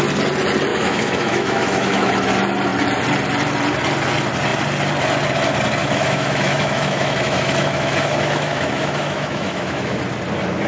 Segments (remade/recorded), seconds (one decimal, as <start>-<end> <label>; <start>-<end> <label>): 0.0-0.7 recorded; 0.7-2.1 remade; 2.1-5.8 recorded; 5.8-10.0 remade; 10.0-10.7 recorded